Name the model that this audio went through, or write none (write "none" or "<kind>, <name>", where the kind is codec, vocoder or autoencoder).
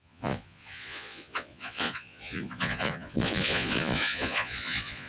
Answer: vocoder, Vocos